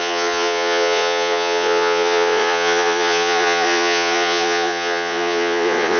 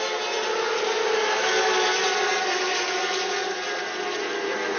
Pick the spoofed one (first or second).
first